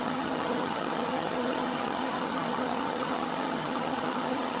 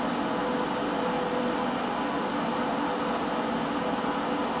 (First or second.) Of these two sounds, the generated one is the first